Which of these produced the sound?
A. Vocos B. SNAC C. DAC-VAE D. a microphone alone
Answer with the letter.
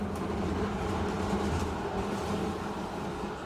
D